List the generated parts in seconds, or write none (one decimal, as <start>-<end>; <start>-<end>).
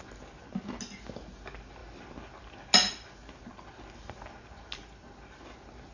none